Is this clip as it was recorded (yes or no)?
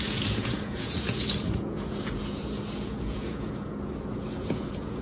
no